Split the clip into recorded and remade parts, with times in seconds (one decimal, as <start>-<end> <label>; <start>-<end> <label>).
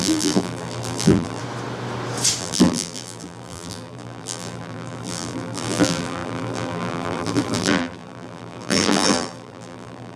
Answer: 0.0-1.4 remade; 1.4-2.4 recorded; 2.4-10.2 remade